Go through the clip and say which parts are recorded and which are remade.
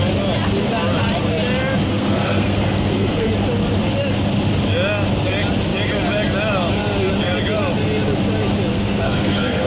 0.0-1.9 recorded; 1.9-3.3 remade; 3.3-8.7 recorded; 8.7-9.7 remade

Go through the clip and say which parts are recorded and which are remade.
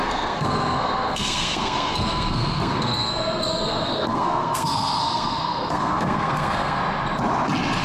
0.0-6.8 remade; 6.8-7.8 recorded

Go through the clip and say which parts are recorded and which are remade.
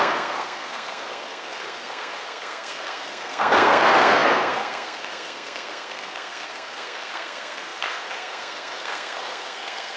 0.0-10.0 remade